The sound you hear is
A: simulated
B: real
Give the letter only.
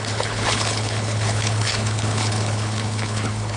A